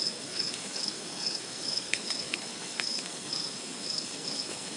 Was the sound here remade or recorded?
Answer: remade